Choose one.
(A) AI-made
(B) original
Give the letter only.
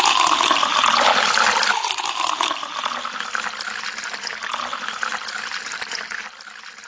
B